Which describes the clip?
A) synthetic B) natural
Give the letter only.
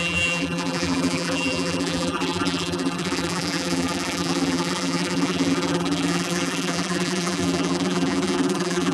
A